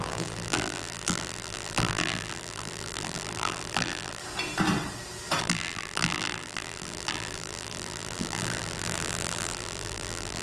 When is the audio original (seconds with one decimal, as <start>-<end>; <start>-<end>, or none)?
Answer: 4.2-5.4